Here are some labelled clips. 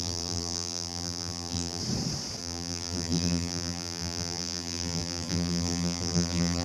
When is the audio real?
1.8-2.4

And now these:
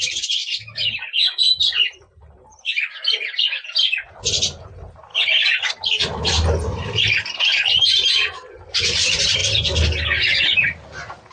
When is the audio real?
0.4-0.9; 2.7-3.3; 9.4-10.4

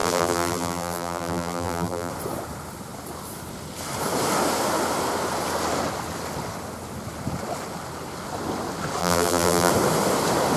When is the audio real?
2.1-9.0; 9.7-10.6

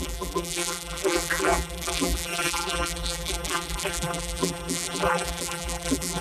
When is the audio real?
none

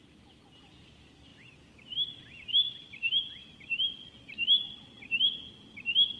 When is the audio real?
0.0-3.4; 4.7-6.2

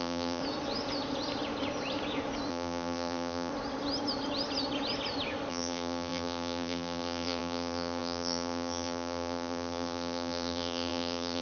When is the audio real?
0.4-2.5; 3.5-5.5

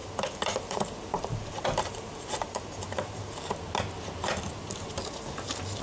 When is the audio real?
3.5-5.0

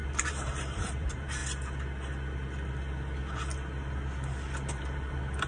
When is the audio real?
1.4-4.7